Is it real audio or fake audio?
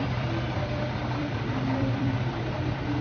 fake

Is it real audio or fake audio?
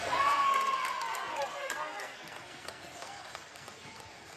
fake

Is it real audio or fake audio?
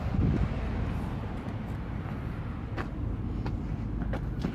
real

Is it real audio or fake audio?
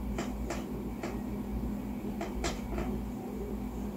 real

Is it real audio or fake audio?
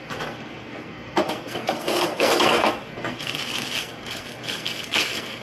fake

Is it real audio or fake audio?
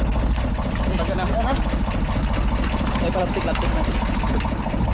real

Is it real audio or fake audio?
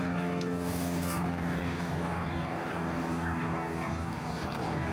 fake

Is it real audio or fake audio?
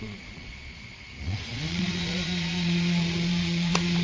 fake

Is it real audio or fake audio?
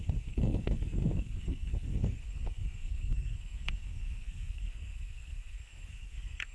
fake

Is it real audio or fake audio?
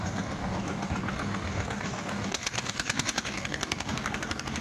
fake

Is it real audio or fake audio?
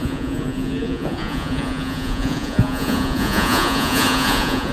fake